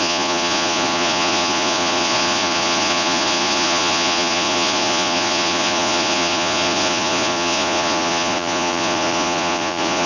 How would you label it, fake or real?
fake